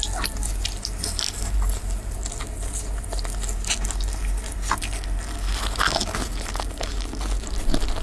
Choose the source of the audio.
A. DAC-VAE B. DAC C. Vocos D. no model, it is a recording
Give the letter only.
D